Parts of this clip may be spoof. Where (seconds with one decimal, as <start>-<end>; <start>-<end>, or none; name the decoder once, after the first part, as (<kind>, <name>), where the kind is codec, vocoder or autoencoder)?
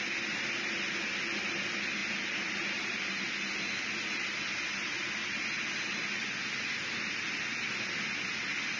none